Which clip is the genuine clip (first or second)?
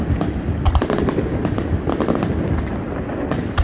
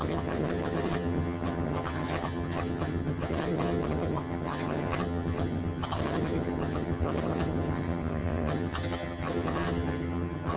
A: first